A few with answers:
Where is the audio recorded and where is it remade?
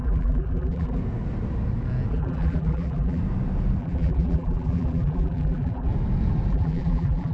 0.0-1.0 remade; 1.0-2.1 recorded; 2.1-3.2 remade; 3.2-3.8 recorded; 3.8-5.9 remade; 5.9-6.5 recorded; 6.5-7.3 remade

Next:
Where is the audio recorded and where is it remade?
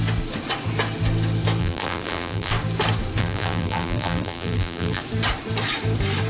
0.0-1.6 recorded; 1.6-2.5 remade; 2.5-3.2 recorded; 3.2-5.0 remade; 5.0-6.3 recorded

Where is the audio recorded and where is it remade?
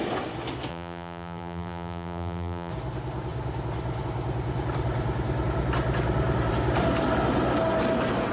0.0-0.7 recorded; 0.7-2.7 remade; 2.7-8.3 recorded